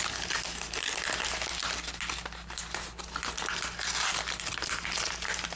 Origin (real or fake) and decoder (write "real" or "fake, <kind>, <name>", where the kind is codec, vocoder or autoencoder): real